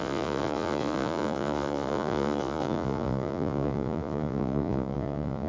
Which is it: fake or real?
fake